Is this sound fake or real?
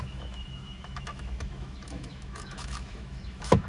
fake